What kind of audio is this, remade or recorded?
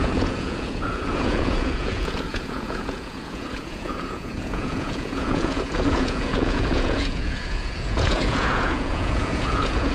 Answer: remade